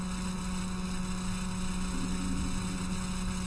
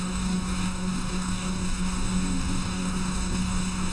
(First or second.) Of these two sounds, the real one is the first